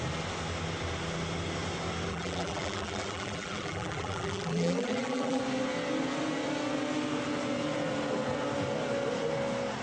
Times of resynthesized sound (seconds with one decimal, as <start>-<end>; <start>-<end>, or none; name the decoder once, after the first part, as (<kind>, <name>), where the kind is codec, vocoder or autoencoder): 2.1-5.4 (vocoder, BigVGAN v2)